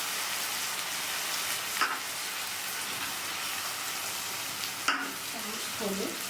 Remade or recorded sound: recorded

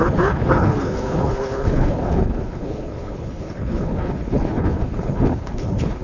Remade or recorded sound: remade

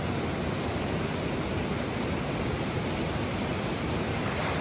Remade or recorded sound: recorded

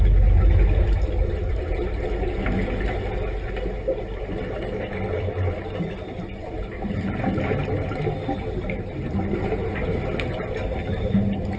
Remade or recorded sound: recorded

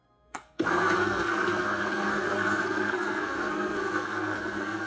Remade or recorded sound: remade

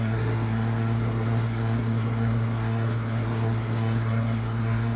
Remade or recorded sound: remade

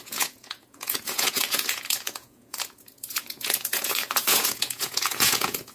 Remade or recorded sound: remade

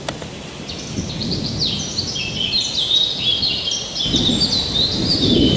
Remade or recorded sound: recorded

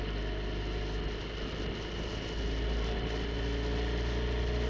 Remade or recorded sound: recorded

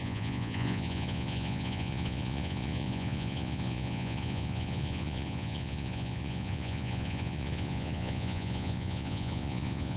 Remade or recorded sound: remade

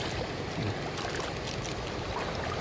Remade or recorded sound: recorded